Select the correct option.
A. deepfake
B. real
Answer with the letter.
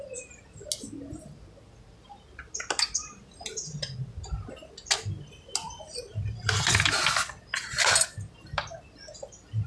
B